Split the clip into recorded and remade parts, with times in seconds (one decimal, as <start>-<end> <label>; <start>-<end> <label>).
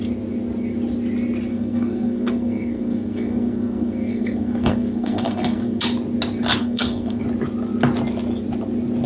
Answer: 0.0-1.5 recorded; 1.5-5.8 remade; 5.8-6.6 recorded; 6.6-7.2 remade; 7.2-9.1 recorded